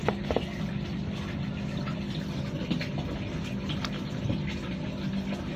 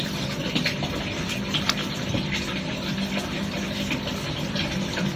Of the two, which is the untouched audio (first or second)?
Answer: first